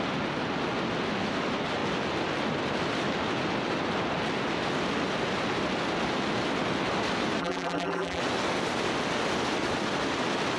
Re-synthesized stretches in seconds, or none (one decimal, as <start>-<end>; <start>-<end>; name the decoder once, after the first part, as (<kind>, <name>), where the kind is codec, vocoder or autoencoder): 7.4-8.2 (vocoder, BigVGAN v2)